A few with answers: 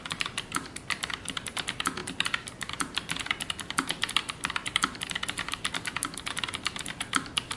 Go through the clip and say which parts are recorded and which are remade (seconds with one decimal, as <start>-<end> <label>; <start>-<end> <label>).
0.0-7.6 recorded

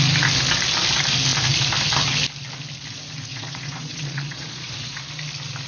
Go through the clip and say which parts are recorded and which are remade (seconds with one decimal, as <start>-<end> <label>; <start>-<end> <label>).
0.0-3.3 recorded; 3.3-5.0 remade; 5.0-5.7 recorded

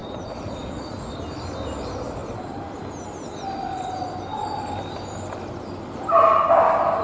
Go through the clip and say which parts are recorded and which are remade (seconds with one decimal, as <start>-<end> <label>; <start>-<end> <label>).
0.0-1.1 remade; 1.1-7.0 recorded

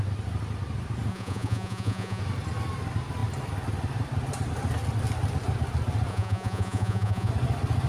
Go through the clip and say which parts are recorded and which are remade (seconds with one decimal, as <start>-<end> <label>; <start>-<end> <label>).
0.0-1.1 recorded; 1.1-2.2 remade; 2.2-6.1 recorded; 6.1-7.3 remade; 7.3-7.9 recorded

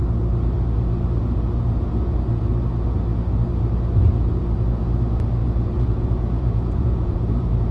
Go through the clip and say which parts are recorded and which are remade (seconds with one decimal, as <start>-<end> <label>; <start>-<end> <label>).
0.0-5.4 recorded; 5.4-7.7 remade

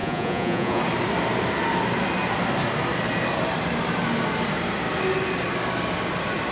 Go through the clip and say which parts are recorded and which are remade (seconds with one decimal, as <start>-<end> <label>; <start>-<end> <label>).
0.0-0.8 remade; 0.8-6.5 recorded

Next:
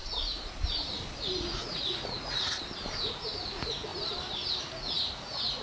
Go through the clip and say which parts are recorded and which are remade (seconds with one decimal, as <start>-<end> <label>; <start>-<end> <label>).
0.0-1.4 recorded; 1.4-2.5 remade; 2.5-3.5 recorded; 3.5-3.9 remade; 3.9-4.6 recorded; 4.6-5.6 remade